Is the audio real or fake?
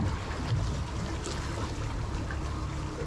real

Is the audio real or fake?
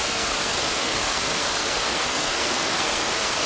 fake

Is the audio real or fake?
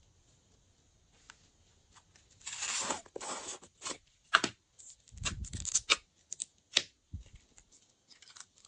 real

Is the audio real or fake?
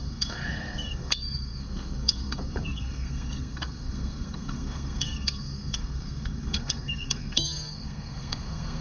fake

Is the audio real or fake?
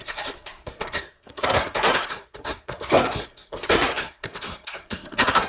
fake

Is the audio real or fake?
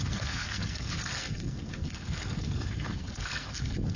fake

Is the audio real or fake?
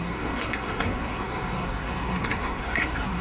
fake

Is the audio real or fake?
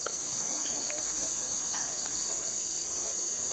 fake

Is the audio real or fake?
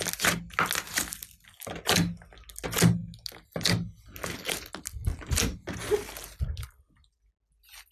real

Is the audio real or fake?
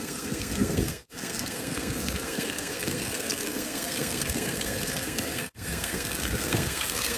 fake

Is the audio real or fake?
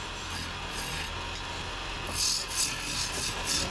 real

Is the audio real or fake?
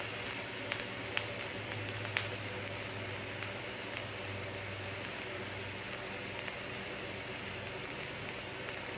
real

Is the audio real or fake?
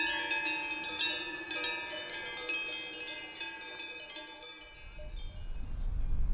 real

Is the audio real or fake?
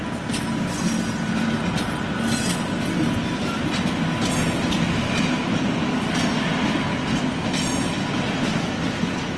real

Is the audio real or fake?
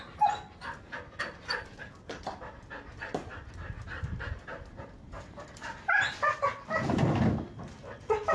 real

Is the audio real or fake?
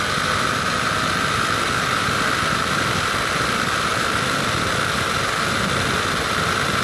real